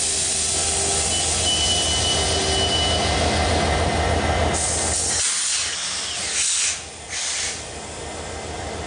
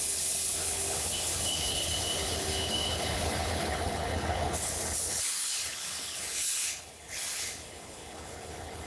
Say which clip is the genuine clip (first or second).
first